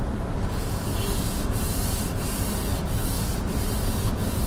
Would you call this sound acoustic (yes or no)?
yes